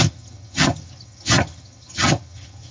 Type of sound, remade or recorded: remade